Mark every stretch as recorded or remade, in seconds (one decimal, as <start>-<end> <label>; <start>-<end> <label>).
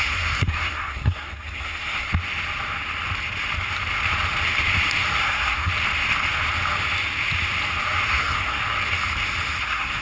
0.0-2.1 remade; 2.1-5.2 recorded; 5.2-5.7 remade; 5.7-8.1 recorded; 8.1-8.6 remade; 8.6-9.6 recorded; 9.6-10.0 remade